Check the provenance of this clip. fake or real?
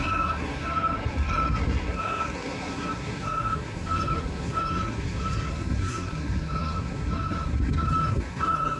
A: fake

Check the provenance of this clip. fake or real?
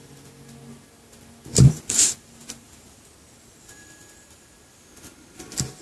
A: real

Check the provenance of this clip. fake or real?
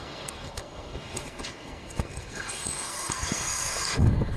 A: fake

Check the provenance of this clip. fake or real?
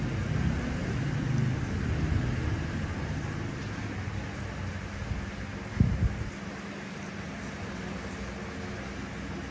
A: real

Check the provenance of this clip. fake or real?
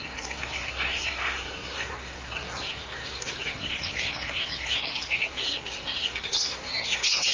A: fake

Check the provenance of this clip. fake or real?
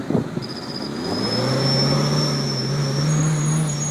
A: real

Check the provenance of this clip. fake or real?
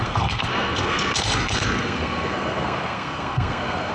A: fake